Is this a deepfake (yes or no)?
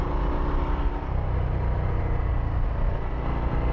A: no